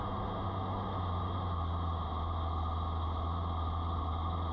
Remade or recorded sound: recorded